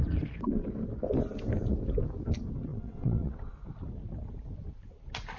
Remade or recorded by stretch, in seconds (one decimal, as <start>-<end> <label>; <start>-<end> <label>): 0.0-2.7 recorded; 2.7-3.5 remade; 3.5-5.4 recorded